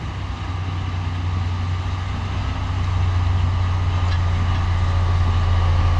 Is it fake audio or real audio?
real